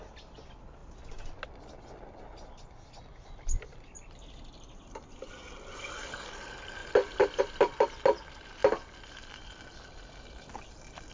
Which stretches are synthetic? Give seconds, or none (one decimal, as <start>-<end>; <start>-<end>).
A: none